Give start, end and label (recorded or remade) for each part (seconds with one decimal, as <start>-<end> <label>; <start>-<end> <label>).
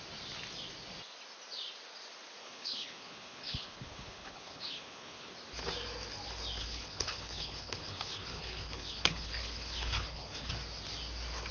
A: 0.0-2.4 recorded; 2.4-5.3 remade; 5.3-6.6 recorded; 6.6-10.5 remade; 10.5-11.5 recorded